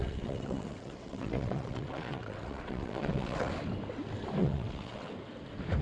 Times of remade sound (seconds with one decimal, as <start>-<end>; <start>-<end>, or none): 0.0-3.5; 4.4-5.1

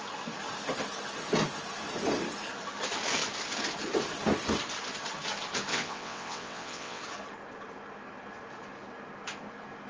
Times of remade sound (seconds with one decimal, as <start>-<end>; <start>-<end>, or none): 5.7-7.0

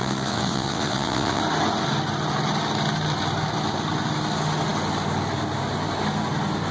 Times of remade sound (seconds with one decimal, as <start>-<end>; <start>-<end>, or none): 0.0-1.4

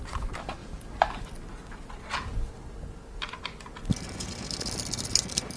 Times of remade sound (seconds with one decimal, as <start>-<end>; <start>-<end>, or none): none

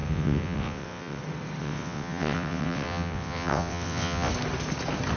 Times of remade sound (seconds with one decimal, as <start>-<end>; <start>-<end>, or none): 0.0-1.2; 1.6-4.3

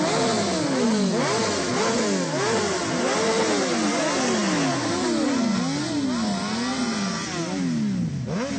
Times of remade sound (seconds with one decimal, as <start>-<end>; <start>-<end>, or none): none

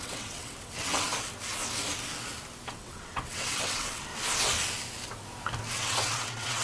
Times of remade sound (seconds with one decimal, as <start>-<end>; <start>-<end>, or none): 0.0-1.1; 2.7-4.1; 5.7-6.6